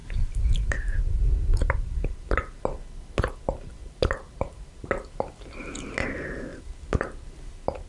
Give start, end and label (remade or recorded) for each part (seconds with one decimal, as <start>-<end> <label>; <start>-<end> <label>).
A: 0.0-2.3 remade; 2.3-3.8 recorded; 3.8-5.3 remade; 5.3-6.5 recorded; 6.5-7.5 remade; 7.5-7.9 recorded